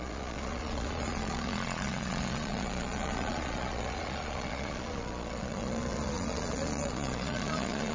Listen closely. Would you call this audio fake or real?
fake